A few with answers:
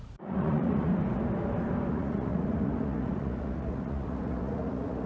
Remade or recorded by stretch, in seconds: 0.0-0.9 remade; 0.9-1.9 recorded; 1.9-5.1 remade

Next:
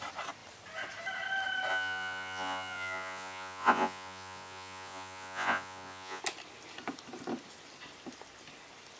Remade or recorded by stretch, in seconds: 0.0-1.7 recorded; 1.7-6.2 remade; 6.2-9.0 recorded

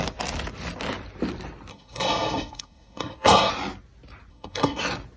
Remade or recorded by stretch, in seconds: 0.0-1.7 recorded; 1.7-3.5 remade; 3.5-4.3 recorded; 4.3-4.8 remade; 4.8-5.2 recorded

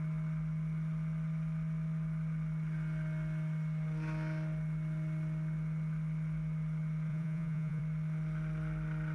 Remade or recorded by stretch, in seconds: 0.0-7.1 recorded; 7.1-7.8 remade; 7.8-9.1 recorded

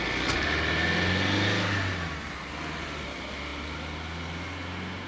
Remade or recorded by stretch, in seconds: 0.0-5.1 recorded

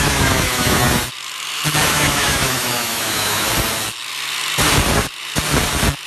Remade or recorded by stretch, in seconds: 0.0-0.8 remade; 0.8-1.9 recorded; 1.9-3.5 remade; 3.5-6.1 recorded

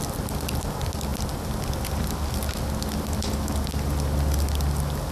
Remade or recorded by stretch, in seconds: 0.0-5.1 recorded

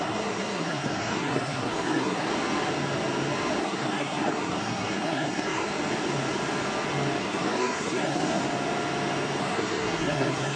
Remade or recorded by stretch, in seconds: 0.0-2.3 remade; 2.3-3.6 recorded; 3.6-5.7 remade; 5.7-7.2 recorded; 7.2-8.4 remade; 8.4-9.4 recorded; 9.4-10.6 remade